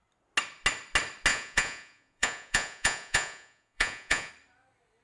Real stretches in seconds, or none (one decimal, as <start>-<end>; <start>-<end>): 0.0-1.3; 4.3-5.0